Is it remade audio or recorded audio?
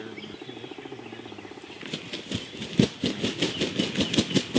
recorded